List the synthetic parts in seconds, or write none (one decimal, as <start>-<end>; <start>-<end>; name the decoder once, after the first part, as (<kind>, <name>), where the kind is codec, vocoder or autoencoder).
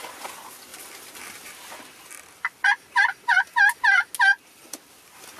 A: none